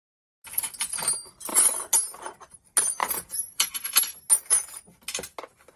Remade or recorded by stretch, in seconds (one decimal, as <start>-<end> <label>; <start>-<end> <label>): 0.0-3.0 recorded; 3.0-4.0 remade; 4.0-5.8 recorded